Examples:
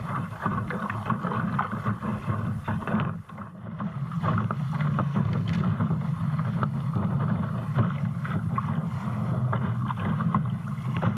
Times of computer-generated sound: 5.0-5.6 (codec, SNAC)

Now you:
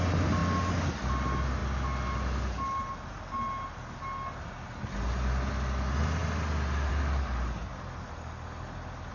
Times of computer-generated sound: none

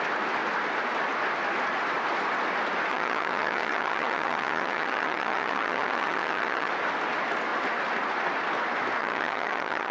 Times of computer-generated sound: 2.9-6.7 (vocoder, HiFi-GAN); 9.0-9.9

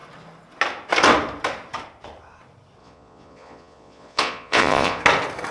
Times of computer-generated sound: 2.8-5.0 (vocoder, Vocos)

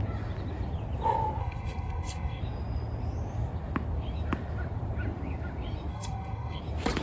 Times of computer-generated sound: 1.4-2.4 (codec, SNAC); 5.9-6.6

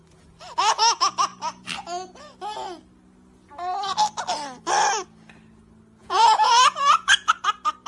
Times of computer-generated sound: 6.0-7.3 (vocoder, Vocos)

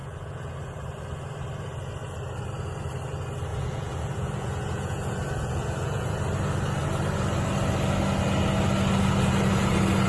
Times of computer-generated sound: 0.0-0.6 (vocoder, Vocos); 3.5-6.2

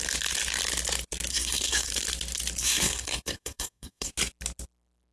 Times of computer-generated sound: 1.3-1.9 (codec, SNAC); 2.6-4.1